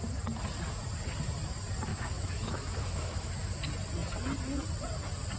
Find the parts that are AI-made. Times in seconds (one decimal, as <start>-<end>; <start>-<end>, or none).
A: 1.9-3.5